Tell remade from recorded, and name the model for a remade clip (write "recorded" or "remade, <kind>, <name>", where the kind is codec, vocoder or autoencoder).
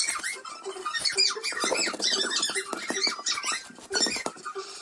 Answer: recorded